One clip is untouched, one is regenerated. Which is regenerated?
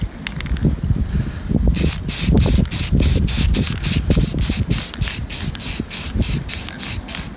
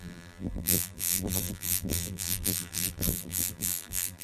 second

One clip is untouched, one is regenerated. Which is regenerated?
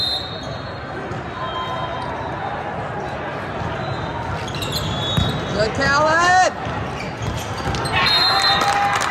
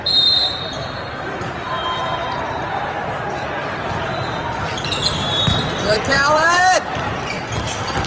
second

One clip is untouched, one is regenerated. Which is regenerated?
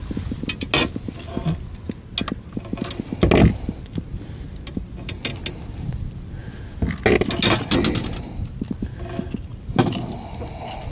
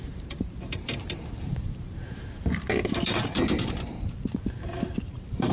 second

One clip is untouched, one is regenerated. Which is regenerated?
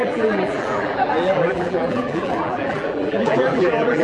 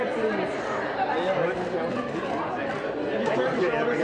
first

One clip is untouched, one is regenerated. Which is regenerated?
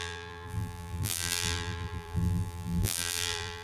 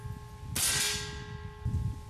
first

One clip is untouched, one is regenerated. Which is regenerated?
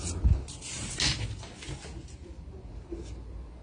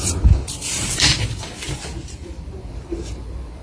second